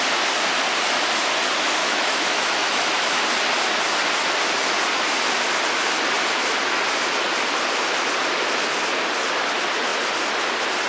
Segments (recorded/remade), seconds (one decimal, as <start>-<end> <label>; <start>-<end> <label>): 0.0-1.8 recorded; 1.8-3.2 remade; 3.2-10.9 recorded